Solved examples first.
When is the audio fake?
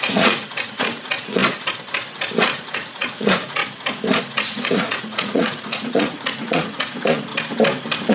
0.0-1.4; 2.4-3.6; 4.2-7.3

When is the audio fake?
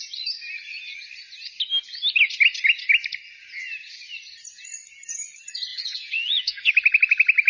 5.7-6.7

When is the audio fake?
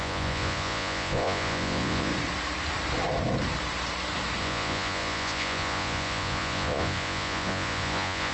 0.0-2.1; 4.4-8.3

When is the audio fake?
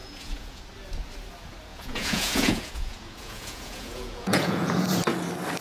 0.0-0.6; 1.7-4.8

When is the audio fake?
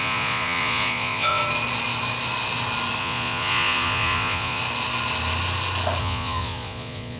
0.0-1.4; 3.0-4.6; 6.0-7.2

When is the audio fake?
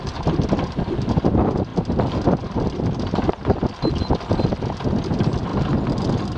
none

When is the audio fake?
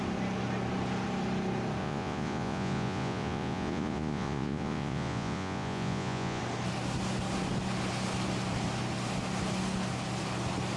1.8-6.4